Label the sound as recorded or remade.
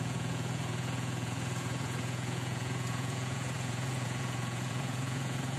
remade